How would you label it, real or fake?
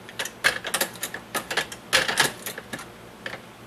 real